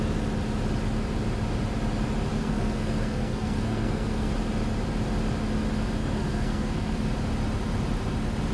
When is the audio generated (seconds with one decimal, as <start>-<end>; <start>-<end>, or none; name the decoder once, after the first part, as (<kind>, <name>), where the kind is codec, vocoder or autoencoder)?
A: 2.3-4.3 (codec, SNAC); 6.0-7.0